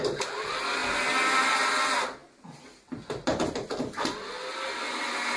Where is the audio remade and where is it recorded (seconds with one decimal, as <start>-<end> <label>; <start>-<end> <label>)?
0.0-0.8 remade; 0.8-1.4 recorded; 1.4-2.2 remade; 2.2-5.4 recorded